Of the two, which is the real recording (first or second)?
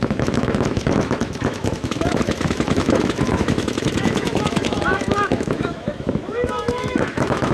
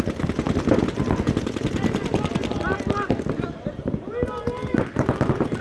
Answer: second